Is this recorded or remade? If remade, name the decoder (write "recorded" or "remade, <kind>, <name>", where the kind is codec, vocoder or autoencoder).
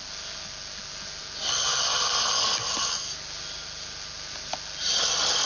recorded